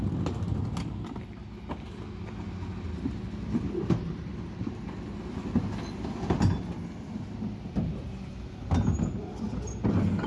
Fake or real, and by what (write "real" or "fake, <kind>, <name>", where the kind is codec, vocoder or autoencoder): real